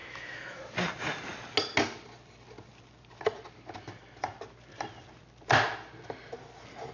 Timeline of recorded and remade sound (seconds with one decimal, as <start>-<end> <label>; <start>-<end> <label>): 0.0-0.6 remade; 0.6-6.9 recorded